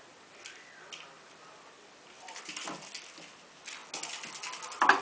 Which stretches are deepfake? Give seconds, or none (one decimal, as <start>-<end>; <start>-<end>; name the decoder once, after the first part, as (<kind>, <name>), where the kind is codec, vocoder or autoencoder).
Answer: none